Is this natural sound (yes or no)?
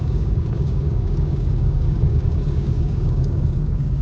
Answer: no